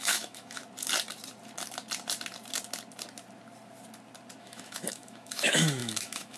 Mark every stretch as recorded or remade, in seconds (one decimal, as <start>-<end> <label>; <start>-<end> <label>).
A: 0.0-0.6 remade; 0.6-4.4 recorded; 4.4-6.4 remade